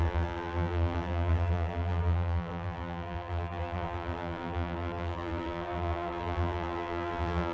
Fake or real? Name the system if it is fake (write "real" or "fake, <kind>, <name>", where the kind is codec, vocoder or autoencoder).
fake, vocoder, BigVGAN v2